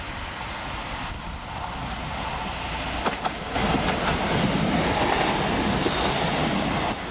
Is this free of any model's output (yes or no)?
yes